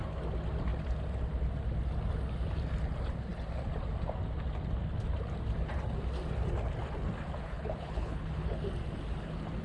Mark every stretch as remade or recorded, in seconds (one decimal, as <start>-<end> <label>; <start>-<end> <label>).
0.0-7.4 recorded; 7.4-8.6 remade; 8.6-9.6 recorded